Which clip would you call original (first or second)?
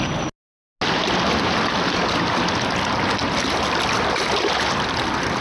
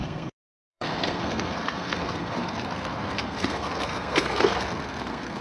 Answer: first